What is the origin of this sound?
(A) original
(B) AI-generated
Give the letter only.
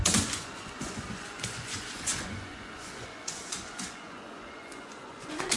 B